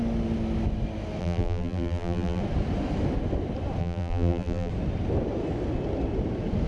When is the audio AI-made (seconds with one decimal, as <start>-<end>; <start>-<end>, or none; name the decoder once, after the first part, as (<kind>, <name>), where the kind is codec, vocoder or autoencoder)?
1.2-2.4 (vocoder, BigVGAN v2); 3.8-4.7